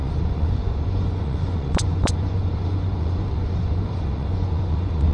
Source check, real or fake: fake